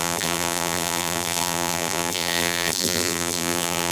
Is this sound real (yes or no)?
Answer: no